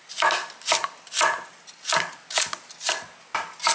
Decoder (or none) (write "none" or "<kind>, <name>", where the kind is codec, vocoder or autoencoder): none